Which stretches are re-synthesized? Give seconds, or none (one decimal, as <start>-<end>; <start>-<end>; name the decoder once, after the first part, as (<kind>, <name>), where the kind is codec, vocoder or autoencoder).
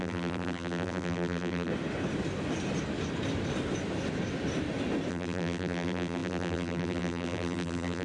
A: 0.0-1.7 (vocoder, BigVGAN v2); 5.1-8.0